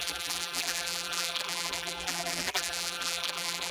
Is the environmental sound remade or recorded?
remade